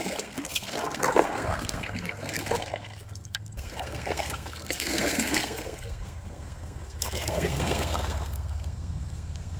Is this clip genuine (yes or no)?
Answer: no